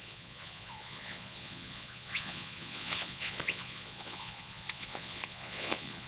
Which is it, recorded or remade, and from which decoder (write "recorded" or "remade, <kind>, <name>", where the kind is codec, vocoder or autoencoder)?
remade, vocoder, Vocos